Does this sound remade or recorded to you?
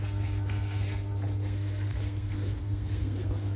remade